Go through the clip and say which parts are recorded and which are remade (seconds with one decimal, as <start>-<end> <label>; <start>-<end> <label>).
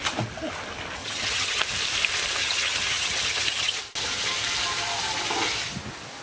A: 0.0-1.0 recorded; 1.0-1.6 remade; 1.6-2.4 recorded; 2.4-3.8 remade; 3.8-6.2 recorded